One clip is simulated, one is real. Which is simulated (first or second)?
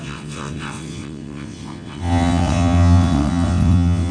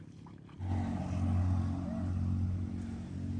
first